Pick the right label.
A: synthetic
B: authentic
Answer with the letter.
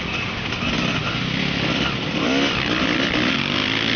B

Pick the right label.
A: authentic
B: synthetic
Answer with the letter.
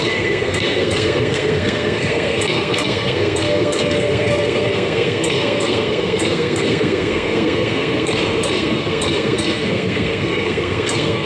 B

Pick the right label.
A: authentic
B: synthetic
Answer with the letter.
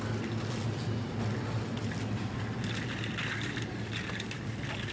A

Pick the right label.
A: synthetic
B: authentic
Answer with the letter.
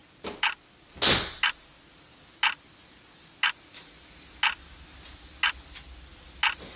B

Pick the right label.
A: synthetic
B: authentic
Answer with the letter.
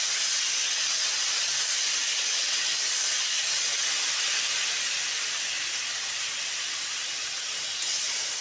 B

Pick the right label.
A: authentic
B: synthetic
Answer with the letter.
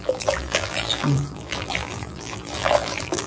B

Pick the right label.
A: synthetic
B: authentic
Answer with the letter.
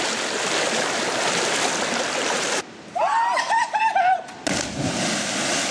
B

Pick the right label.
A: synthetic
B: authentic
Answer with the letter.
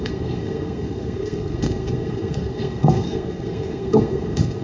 A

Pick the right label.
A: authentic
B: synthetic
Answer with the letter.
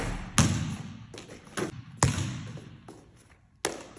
A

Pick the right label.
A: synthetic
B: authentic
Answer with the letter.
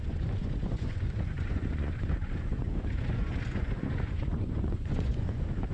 A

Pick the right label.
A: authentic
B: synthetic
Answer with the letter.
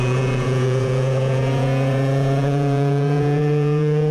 B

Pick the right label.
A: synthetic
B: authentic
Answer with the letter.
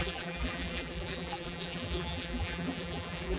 A